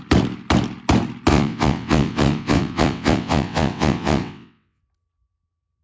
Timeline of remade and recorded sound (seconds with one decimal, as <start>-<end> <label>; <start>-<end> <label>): 0.0-1.3 recorded; 1.3-4.8 remade; 4.8-5.8 recorded